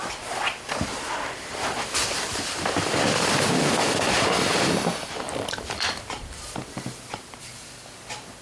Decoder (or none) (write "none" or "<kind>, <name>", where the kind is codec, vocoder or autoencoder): vocoder, BigVGAN v2